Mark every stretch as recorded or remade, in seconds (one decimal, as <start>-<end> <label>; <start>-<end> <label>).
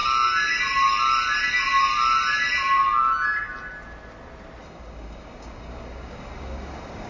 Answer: 0.0-0.6 remade; 0.6-4.6 recorded; 4.6-7.1 remade